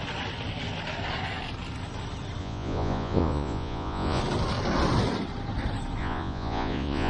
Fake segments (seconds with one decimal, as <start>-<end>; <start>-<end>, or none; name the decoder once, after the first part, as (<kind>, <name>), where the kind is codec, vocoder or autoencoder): 2.4-4.2 (vocoder, Vocos); 6.0-7.1